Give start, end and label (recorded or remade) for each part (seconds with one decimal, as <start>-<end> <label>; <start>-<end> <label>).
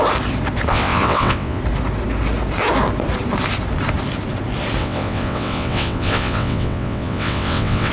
0.0-0.7 recorded; 0.7-1.6 remade; 1.6-4.8 recorded; 4.8-7.9 remade